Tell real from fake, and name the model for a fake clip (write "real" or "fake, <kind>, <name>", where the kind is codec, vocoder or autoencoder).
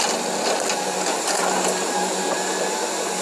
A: real